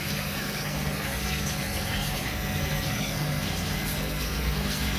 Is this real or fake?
fake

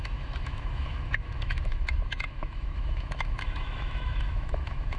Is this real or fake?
fake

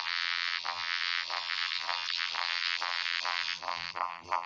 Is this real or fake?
fake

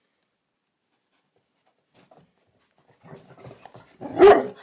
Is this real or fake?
fake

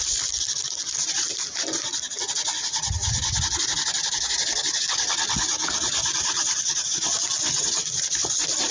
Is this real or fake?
real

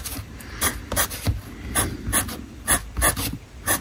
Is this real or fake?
real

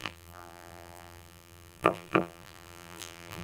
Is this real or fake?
fake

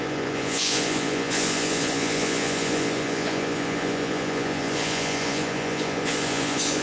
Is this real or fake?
fake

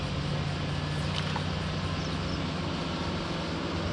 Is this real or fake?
real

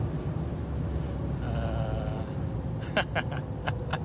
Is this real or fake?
real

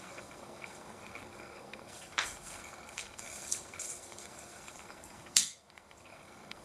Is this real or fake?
fake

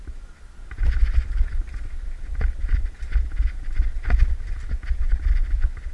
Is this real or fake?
real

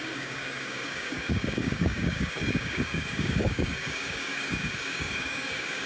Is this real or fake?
fake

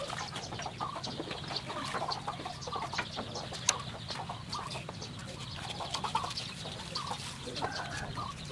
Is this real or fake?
real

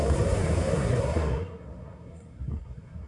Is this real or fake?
fake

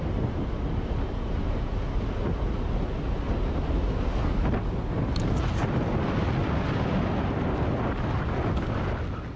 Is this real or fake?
real